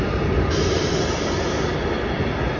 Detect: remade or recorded recorded